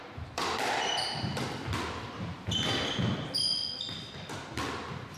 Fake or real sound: fake